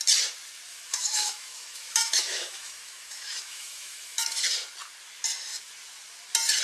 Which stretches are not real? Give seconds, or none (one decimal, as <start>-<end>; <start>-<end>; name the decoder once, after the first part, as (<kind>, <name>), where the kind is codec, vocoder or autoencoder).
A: 0.7-4.4 (autoencoder, DAC-VAE)